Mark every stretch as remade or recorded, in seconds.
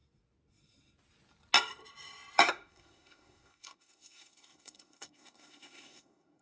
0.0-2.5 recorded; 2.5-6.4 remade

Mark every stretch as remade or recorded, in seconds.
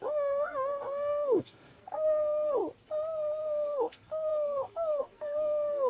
0.0-2.6 remade; 2.6-3.4 recorded; 3.4-5.9 remade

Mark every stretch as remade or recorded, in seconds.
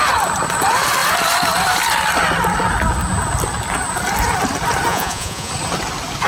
0.0-4.9 recorded; 4.9-5.5 remade; 5.5-6.3 recorded